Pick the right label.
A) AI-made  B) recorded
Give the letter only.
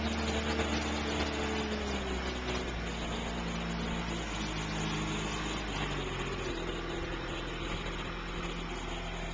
B